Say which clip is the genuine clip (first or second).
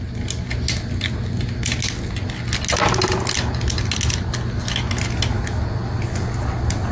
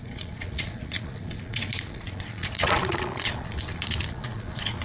first